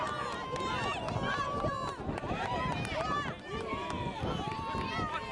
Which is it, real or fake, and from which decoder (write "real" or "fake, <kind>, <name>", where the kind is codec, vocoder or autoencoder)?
real